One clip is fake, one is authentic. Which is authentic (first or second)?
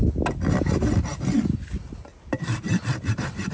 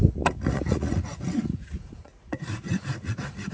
first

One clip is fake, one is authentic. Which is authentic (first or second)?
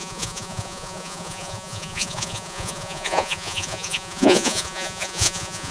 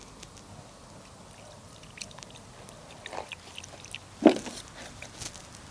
second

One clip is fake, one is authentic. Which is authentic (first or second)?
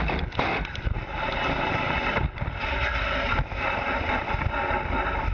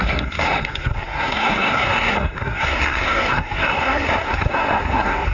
first